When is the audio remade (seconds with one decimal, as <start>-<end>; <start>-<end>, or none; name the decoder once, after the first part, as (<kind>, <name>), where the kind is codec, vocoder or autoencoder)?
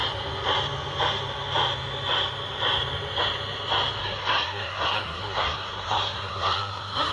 4.0-7.1 (codec, SNAC)